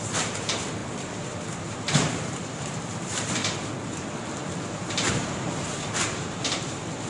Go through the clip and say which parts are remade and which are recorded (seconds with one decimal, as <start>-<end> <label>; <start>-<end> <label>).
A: 0.0-3.4 remade; 3.4-5.1 recorded; 5.1-7.1 remade